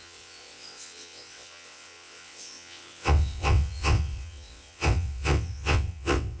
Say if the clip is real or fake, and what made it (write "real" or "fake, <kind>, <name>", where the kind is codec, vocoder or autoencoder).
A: fake, vocoder, WaveNeXt